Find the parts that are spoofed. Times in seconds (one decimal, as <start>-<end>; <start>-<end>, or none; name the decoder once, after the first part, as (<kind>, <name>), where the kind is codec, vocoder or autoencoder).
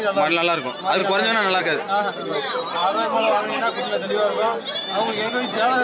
none